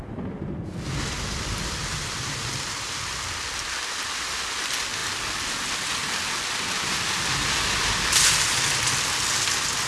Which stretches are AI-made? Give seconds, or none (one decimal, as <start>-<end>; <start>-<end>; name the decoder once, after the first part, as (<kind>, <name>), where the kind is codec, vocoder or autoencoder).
none